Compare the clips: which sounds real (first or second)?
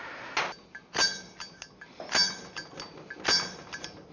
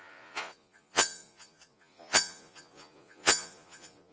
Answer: first